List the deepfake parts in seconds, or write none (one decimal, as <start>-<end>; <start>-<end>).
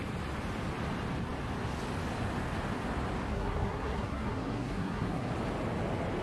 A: 3.3-5.3